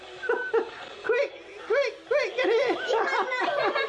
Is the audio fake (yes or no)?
no